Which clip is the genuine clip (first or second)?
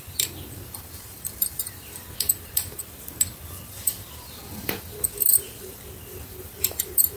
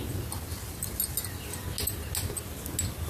second